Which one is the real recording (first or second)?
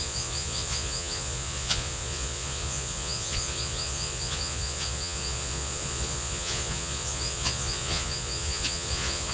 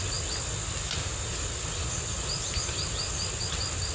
second